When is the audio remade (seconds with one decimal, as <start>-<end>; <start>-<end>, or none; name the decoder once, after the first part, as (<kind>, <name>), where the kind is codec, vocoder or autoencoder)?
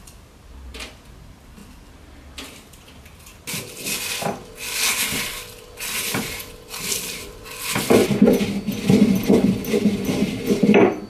none